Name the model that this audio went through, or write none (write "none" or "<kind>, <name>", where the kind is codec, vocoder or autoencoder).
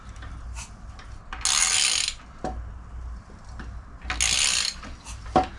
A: none